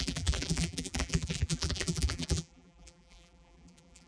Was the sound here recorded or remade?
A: remade